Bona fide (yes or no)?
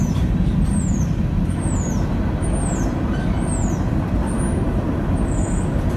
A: yes